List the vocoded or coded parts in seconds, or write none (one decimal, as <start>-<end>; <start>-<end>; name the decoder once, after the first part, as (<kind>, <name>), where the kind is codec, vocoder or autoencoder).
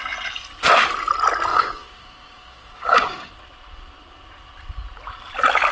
1.5-3.3 (codec, DAC)